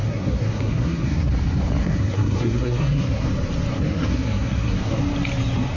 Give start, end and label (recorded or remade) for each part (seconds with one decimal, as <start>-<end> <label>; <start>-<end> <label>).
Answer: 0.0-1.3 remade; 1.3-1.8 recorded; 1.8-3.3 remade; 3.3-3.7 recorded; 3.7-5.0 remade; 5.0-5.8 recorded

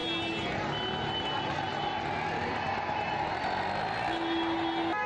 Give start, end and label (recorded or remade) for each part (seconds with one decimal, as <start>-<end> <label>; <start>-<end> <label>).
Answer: 0.0-5.1 recorded

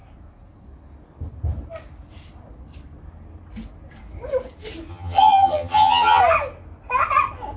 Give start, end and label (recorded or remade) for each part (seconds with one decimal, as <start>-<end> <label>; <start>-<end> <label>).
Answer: 0.0-4.9 recorded; 4.9-6.2 remade; 6.2-7.6 recorded

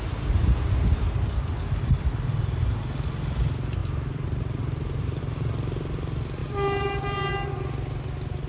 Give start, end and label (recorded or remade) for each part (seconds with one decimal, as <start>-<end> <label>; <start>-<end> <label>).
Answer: 0.0-3.8 recorded; 3.8-5.2 remade; 5.2-6.4 recorded; 6.4-7.3 remade; 7.3-8.5 recorded